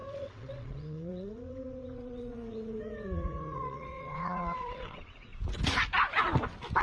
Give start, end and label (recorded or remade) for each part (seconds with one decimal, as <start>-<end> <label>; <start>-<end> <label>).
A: 0.0-5.3 remade; 5.3-6.8 recorded